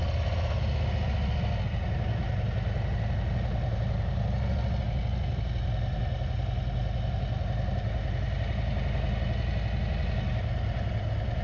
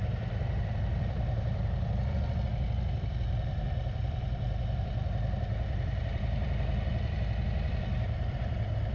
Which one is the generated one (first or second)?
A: second